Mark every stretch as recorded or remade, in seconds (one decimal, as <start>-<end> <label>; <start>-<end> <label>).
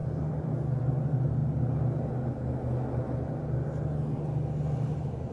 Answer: 0.0-0.9 remade; 0.9-5.3 recorded